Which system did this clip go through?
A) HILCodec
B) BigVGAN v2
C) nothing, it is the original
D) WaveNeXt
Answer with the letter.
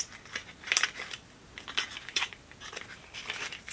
C